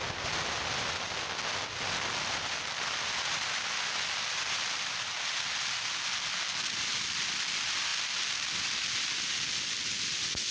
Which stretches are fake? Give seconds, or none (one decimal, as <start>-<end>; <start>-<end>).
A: none